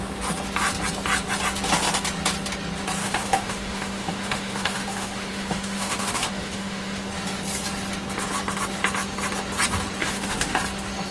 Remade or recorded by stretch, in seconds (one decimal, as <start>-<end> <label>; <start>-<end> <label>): 0.0-3.0 recorded; 3.0-7.1 remade; 7.1-10.0 recorded; 10.0-10.6 remade; 10.6-11.1 recorded

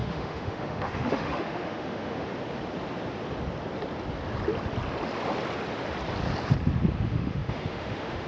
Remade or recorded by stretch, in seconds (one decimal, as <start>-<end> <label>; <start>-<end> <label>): 0.0-2.3 remade; 2.3-6.9 recorded; 6.9-8.3 remade

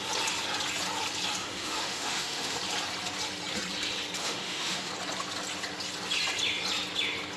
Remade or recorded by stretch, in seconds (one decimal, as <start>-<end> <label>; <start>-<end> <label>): 0.0-1.4 recorded; 1.4-2.6 remade; 2.6-4.2 recorded; 4.2-4.9 remade; 4.9-7.4 recorded

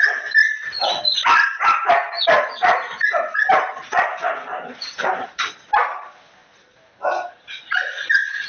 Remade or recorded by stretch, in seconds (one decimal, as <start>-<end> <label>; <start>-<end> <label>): 0.0-8.5 recorded

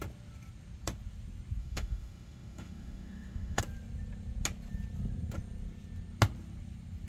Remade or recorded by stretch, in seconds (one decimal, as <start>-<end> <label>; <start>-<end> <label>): 0.0-1.6 recorded; 1.6-3.6 remade; 3.6-7.1 recorded

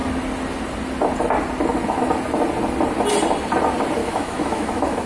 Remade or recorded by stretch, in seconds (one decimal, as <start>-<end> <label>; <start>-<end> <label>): 0.0-4.0 recorded; 4.0-5.1 remade